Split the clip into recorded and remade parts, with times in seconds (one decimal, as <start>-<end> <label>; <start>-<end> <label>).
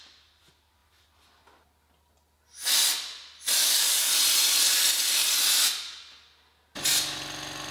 0.0-3.6 recorded; 3.6-4.1 remade; 4.1-7.7 recorded